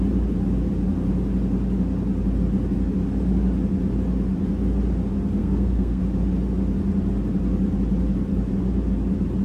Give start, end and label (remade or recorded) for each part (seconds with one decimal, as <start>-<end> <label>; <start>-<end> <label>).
0.0-5.4 recorded; 5.4-6.0 remade; 6.0-9.4 recorded